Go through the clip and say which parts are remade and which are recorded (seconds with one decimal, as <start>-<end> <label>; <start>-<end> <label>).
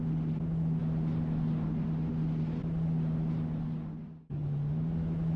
0.0-5.4 recorded